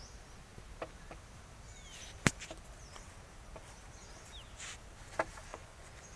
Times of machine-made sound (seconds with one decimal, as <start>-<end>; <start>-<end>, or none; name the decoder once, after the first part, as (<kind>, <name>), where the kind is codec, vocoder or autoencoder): 5.5-6.2 (vocoder, Vocos)